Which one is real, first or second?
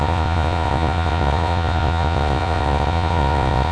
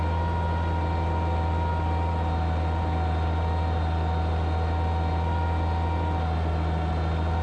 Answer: second